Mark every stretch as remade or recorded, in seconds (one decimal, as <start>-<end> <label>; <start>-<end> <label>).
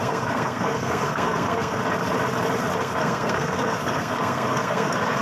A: 0.0-1.8 remade; 1.8-2.8 recorded; 2.8-5.2 remade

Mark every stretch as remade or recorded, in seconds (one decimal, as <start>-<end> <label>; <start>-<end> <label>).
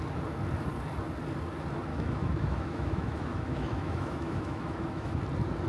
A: 0.0-1.9 recorded; 1.9-5.2 remade; 5.2-5.7 recorded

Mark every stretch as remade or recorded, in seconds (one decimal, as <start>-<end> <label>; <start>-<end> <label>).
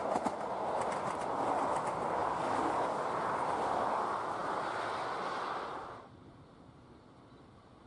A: 0.0-2.2 recorded; 2.2-3.0 remade; 3.0-7.9 recorded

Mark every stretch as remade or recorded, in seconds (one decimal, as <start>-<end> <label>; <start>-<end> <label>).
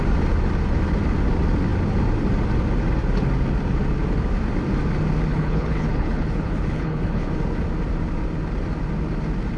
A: 0.0-5.3 recorded; 5.3-7.3 remade; 7.3-9.6 recorded